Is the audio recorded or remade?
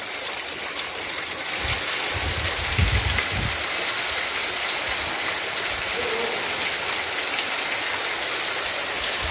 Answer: recorded